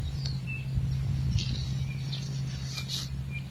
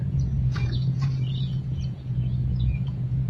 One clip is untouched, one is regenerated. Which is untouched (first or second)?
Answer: first